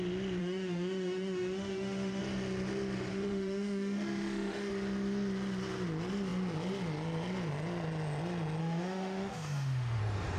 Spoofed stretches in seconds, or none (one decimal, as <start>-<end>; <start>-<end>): 0.4-2.2; 3.1-4.7; 8.6-10.0